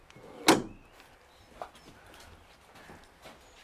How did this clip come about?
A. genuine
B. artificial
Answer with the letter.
A